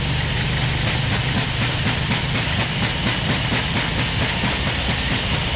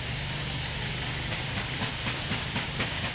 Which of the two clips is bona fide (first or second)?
first